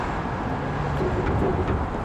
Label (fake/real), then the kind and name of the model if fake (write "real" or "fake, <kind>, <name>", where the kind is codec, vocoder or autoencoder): real